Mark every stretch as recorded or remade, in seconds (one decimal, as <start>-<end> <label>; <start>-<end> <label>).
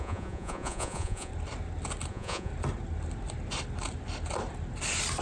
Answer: 0.0-1.3 remade; 1.3-2.1 recorded; 2.1-2.5 remade; 2.5-5.2 recorded